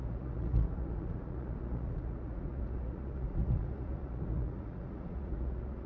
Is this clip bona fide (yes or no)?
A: no